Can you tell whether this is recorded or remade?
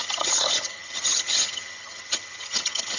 remade